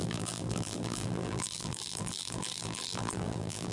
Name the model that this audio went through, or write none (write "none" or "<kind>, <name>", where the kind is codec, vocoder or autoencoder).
vocoder, BigVGAN v2